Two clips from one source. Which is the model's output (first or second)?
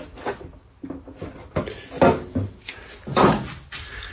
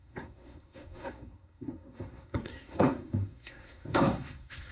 second